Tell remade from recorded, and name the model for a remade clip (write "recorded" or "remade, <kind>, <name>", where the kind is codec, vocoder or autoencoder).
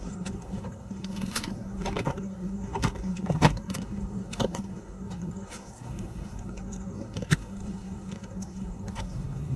remade, codec, SNAC